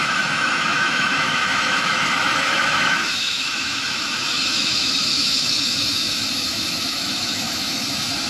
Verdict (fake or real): fake